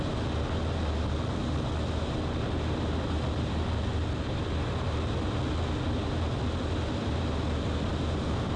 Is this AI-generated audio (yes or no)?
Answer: no